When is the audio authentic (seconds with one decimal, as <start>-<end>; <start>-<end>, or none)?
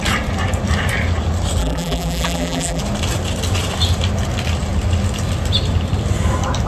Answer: 0.0-1.6; 2.8-6.7